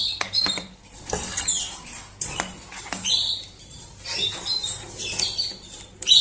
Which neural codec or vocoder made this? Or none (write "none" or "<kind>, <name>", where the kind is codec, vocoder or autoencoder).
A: none